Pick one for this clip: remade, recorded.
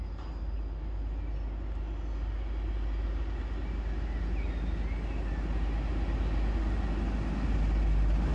recorded